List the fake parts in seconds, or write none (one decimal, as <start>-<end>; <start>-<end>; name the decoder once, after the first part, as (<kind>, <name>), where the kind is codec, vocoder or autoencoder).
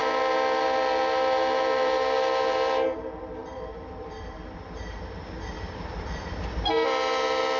0.0-7.6 (vocoder, BigVGAN v2)